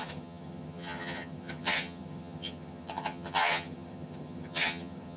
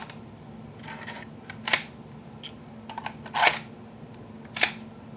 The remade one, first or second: first